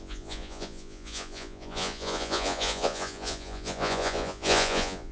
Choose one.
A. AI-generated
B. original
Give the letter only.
A